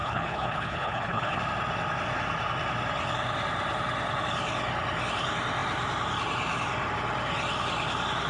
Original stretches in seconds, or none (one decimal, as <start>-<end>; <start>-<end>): 1.4-8.3